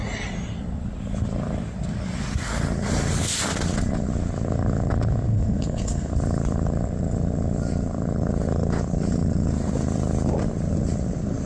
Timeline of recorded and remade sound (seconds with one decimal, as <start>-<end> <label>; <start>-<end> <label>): 0.0-5.3 recorded; 5.3-6.1 remade; 6.1-11.5 recorded